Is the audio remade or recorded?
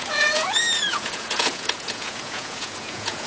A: remade